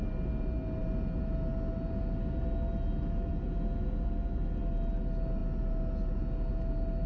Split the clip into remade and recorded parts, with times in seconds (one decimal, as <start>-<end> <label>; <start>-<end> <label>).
0.0-7.1 recorded